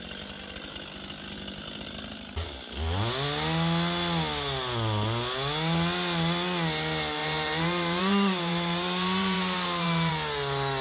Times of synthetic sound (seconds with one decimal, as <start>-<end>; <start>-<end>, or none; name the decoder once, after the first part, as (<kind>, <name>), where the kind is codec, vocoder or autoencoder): 7.2-10.1 (vocoder, BigVGAN v2)